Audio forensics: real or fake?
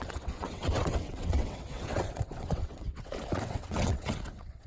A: fake